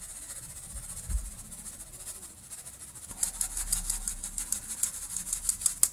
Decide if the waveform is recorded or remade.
recorded